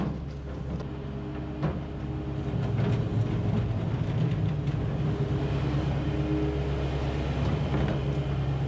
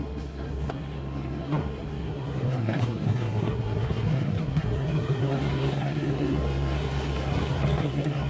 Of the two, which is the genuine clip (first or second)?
first